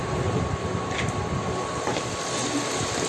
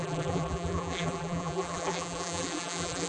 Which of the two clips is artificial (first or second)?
second